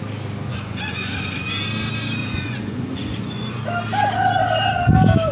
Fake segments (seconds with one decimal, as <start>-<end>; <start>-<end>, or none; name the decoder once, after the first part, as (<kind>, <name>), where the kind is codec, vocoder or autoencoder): 0.5-1.1 (vocoder, Vocos); 2.2-3.6